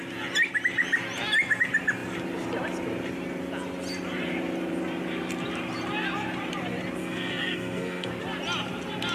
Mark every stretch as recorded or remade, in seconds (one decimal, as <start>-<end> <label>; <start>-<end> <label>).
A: 0.0-7.0 recorded; 7.0-8.1 remade; 8.1-9.1 recorded